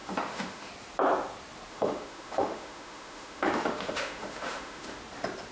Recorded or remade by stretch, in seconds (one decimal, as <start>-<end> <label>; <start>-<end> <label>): 0.0-0.7 remade; 0.7-1.7 recorded; 1.7-5.0 remade; 5.0-5.5 recorded